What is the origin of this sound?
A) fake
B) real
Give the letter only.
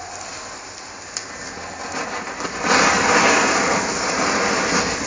B